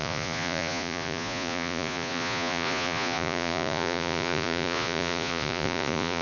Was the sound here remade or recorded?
remade